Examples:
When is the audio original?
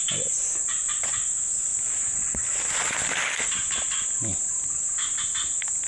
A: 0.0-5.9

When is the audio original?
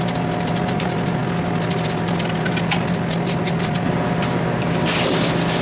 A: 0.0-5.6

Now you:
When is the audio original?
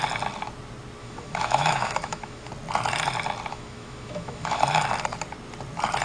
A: 0.0-1.0; 2.5-3.5; 4.6-6.0